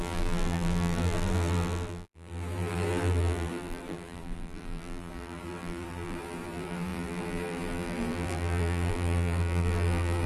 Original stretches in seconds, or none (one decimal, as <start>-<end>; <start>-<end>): none